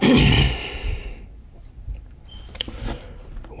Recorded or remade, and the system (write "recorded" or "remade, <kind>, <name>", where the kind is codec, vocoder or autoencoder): recorded